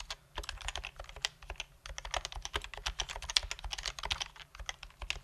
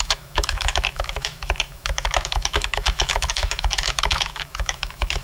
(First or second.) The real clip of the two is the first